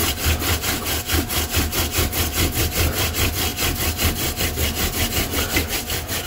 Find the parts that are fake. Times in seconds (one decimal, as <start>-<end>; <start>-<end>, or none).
none